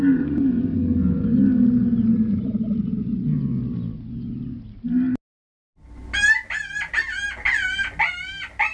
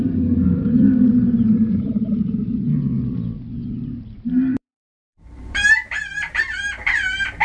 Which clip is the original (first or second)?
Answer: first